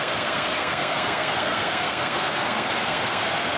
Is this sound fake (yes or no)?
yes